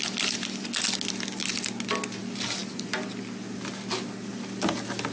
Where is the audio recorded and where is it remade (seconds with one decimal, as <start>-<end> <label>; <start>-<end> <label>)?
0.0-5.1 recorded